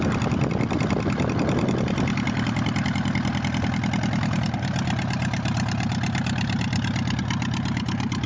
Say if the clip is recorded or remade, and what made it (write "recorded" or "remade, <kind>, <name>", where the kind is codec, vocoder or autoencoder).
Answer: recorded